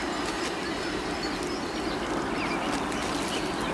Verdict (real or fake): real